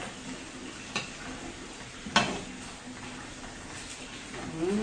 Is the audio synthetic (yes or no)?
no